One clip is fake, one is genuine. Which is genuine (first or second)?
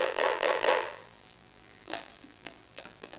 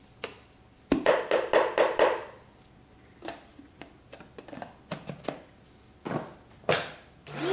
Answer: second